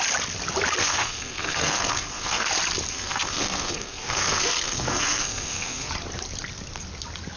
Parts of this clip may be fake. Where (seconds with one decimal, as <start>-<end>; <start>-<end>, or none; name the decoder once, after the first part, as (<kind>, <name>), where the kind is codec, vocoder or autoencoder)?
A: 0.8-2.5 (codec, SNAC); 2.9-5.9